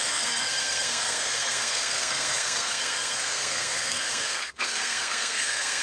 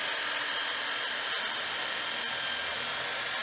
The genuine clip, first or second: second